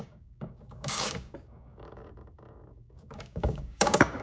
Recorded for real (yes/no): no